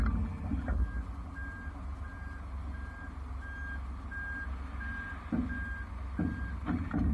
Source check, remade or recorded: recorded